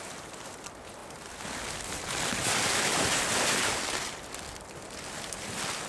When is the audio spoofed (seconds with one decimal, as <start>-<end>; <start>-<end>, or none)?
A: none